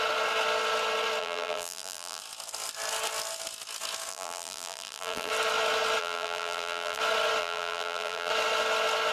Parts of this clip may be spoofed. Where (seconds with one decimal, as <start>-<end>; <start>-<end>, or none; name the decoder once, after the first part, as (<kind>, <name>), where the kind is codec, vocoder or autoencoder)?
1.2-2.2 (vocoder, BigVGAN v2); 4.1-5.3; 6.0-7.0; 7.4-8.3